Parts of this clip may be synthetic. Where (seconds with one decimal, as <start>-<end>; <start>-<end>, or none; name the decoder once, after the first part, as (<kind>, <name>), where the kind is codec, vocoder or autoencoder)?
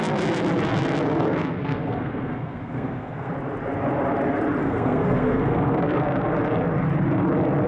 1.1-3.3 (codec, SNAC); 4.6-6.0